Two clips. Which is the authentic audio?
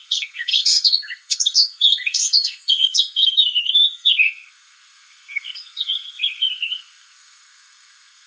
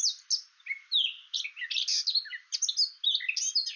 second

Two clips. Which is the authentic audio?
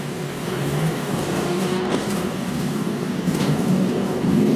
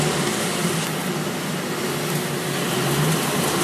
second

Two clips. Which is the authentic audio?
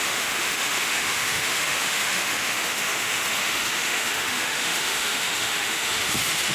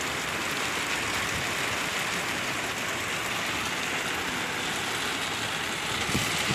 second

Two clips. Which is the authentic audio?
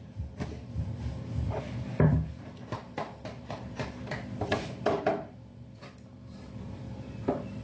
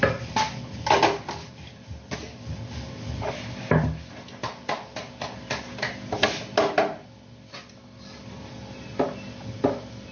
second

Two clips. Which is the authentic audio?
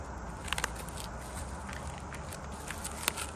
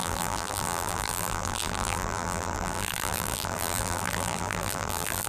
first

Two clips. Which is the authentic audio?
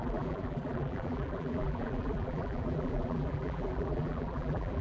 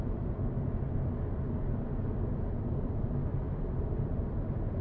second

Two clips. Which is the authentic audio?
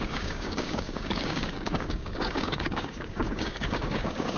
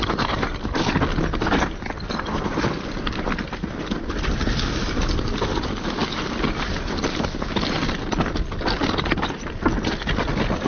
second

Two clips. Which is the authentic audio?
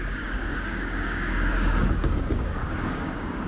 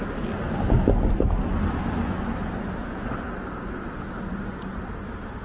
second